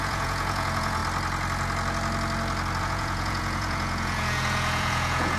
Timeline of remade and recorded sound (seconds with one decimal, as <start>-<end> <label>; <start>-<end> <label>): 0.0-1.0 remade; 1.0-2.8 recorded; 2.8-5.4 remade